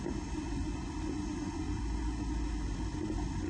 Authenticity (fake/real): real